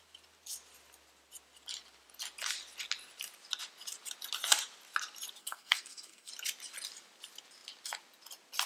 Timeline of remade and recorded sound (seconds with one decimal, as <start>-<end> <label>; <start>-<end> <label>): 0.0-5.4 recorded; 5.4-6.3 remade; 6.3-8.7 recorded